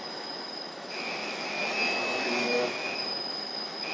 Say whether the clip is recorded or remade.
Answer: remade